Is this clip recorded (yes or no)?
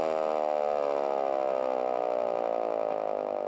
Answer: yes